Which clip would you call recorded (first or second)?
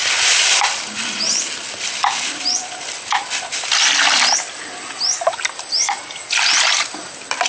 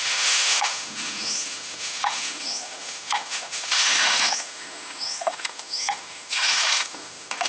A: first